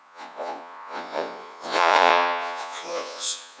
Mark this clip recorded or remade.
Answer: remade